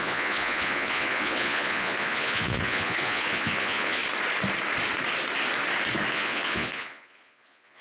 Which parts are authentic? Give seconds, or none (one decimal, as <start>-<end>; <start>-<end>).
4.0-6.1